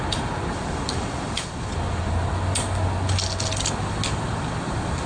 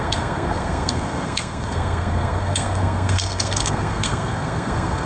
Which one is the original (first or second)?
first